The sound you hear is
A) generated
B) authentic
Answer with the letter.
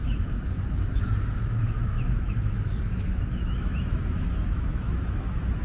A